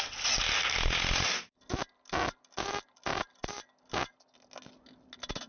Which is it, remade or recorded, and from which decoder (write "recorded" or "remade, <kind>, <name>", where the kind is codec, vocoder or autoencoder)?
recorded